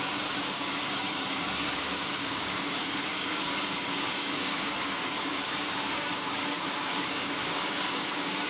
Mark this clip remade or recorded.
remade